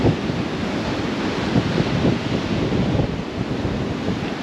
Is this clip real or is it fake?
real